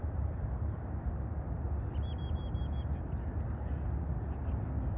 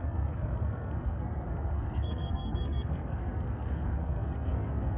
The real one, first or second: first